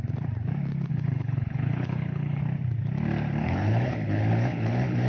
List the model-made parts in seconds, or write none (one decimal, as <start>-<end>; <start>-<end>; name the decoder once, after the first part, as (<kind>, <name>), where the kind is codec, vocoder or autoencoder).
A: 0.9-2.4 (codec, HILCodec); 3.4-5.1